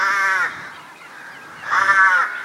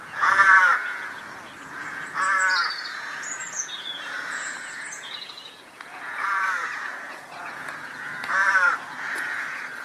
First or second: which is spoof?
second